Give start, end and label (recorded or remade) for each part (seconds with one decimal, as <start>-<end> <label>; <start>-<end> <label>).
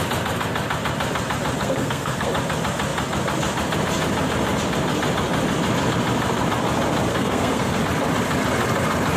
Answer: 0.0-1.6 recorded; 1.6-2.3 remade; 2.3-7.1 recorded; 7.1-7.8 remade; 7.8-9.2 recorded